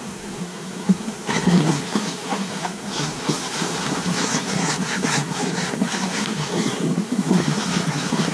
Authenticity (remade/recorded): remade